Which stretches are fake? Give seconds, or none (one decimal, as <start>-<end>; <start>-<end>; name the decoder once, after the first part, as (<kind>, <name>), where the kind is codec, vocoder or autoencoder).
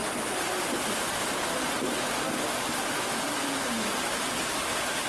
none